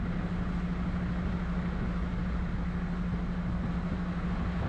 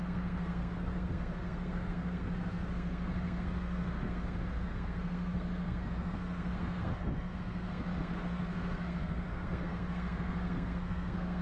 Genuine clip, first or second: first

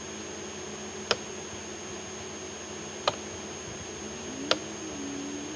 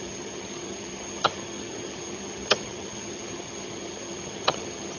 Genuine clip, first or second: first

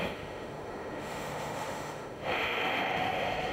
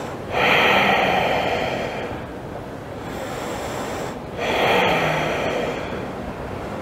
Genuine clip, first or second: second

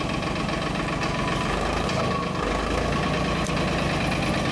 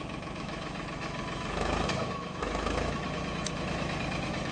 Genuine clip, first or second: first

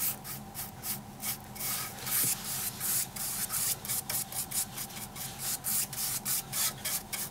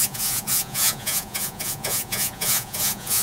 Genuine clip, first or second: first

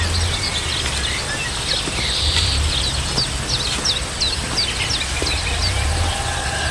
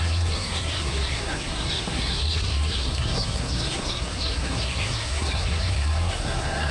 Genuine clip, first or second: first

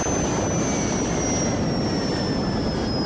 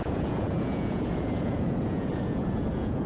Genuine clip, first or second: first